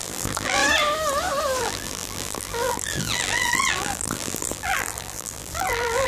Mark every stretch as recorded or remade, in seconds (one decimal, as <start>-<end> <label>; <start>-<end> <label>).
0.0-0.6 remade; 0.6-1.6 recorded; 1.6-6.1 remade